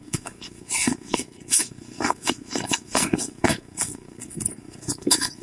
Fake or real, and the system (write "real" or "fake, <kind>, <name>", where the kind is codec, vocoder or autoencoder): fake, codec, SNAC